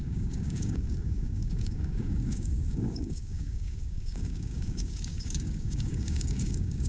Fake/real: fake